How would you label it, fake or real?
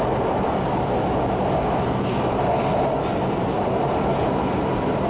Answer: real